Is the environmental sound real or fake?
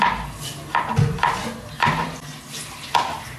real